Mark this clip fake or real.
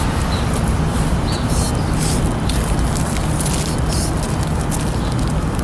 real